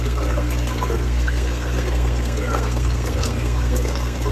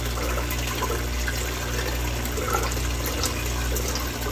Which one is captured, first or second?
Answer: second